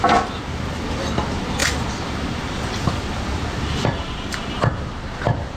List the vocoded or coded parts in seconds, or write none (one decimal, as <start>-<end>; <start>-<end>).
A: 1.6-5.0